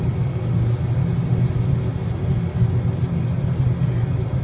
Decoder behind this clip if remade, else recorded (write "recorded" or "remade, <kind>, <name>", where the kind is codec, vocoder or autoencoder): recorded